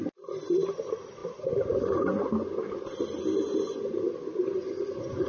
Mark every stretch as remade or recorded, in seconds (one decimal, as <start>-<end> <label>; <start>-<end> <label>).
0.0-5.3 recorded